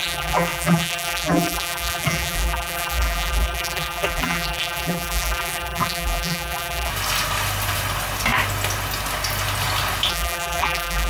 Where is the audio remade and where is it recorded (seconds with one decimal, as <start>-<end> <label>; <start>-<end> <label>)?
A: 0.0-6.9 remade; 6.9-10.1 recorded; 10.1-11.1 remade